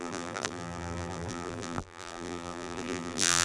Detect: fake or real fake